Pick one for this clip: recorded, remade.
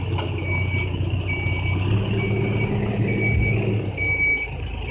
recorded